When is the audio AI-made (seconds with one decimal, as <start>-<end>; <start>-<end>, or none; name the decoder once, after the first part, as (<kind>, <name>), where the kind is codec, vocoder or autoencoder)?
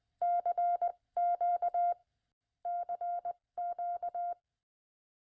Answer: none